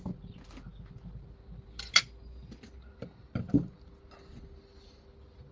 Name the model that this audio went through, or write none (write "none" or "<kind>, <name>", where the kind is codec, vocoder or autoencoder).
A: none